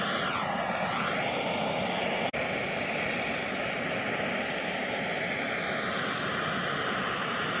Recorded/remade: recorded